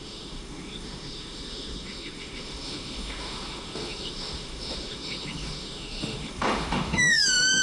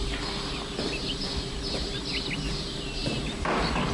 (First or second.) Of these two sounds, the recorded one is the second